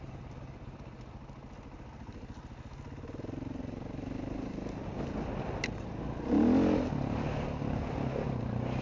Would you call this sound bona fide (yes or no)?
yes